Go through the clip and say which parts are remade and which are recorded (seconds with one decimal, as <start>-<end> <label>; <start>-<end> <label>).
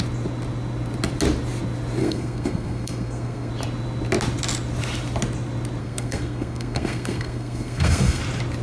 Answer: 0.0-2.0 recorded; 2.0-3.5 remade; 3.5-5.8 recorded; 5.8-8.2 remade; 8.2-8.6 recorded